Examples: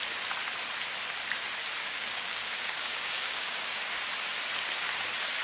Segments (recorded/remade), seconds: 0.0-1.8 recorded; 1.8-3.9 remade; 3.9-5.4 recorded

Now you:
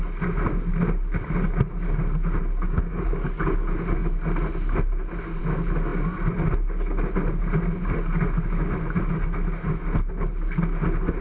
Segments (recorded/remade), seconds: 0.0-2.6 recorded; 2.6-3.4 remade; 3.4-11.2 recorded

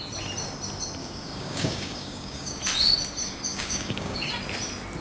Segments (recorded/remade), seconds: 0.0-1.0 recorded; 1.0-2.6 remade; 2.6-3.5 recorded; 3.5-4.3 remade; 4.3-5.0 recorded

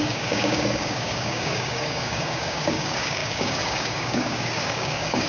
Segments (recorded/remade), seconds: 0.0-5.3 remade

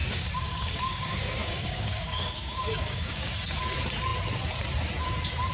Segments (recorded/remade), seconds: 0.0-3.3 remade; 3.3-5.5 recorded

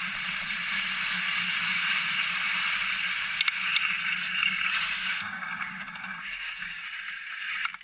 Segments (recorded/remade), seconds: 0.0-4.4 recorded; 4.4-6.8 remade; 6.8-7.8 recorded